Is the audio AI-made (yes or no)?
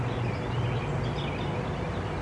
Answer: no